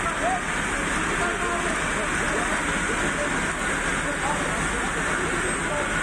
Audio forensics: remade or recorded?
recorded